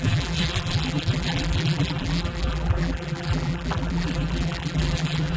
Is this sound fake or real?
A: fake